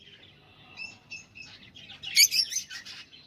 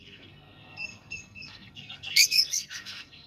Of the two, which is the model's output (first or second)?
second